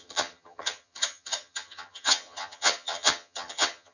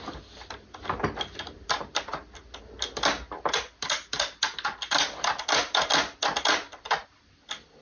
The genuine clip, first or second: second